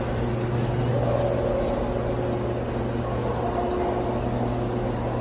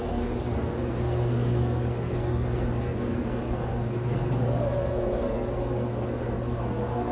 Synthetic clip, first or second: second